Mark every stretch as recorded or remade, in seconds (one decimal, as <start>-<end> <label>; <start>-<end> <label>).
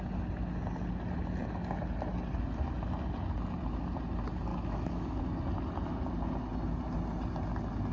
0.0-4.5 recorded; 4.5-5.2 remade; 5.2-7.9 recorded